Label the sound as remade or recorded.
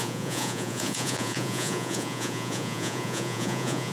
remade